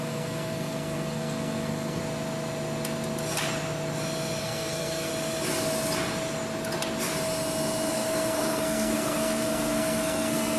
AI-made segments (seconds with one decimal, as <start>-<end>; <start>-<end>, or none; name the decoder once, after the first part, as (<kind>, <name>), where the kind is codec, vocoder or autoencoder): 0.0-2.0 (codec, SNAC); 4.4-5.1; 7.9-10.6